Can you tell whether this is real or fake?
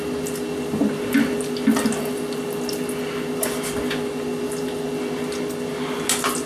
real